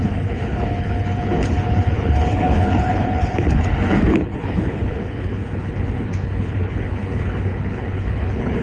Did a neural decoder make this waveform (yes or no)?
yes